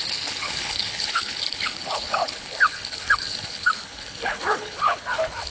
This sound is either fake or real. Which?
fake